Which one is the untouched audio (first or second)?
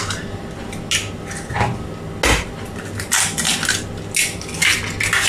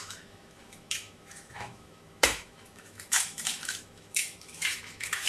first